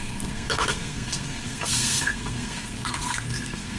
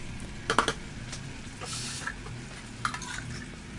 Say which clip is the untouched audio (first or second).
second